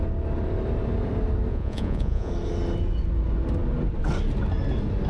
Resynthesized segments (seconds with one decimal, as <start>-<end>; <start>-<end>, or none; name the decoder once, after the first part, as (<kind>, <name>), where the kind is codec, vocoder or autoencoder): 1.5-2.3 (vocoder, Vocos)